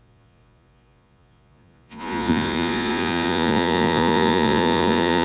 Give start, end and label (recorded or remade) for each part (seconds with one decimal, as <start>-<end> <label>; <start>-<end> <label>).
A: 0.0-5.2 remade